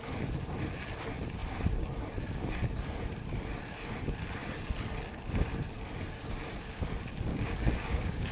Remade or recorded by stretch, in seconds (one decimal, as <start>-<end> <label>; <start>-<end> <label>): 0.0-7.3 recorded; 7.3-8.3 remade